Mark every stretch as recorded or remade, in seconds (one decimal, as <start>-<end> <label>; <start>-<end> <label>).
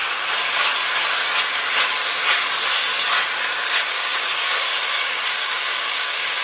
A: 0.0-3.6 recorded; 3.6-6.4 remade